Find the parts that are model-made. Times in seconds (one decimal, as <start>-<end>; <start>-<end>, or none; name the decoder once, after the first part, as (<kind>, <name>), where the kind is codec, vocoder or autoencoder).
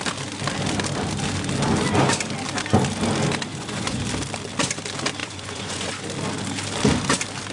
3.5-4.0 (vocoder, Vocos); 5.2-5.9